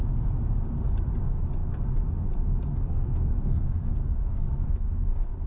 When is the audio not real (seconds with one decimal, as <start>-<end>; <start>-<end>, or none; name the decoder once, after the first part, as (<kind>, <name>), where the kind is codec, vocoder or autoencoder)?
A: 2.7-5.5 (codec, SNAC)